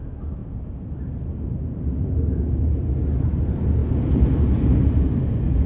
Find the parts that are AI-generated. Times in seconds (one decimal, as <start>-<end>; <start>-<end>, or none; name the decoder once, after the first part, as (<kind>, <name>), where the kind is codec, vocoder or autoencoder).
none